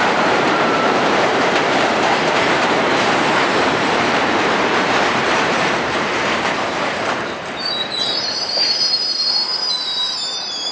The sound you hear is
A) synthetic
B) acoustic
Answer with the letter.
A